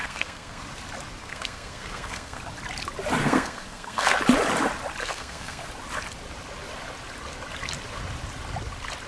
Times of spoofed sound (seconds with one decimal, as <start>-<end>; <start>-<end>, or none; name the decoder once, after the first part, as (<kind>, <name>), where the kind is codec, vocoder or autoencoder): 0.0-0.6 (codec, SNAC); 1.2-2.4; 3.2-4.2; 5.0-5.7